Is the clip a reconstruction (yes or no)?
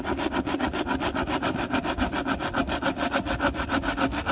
no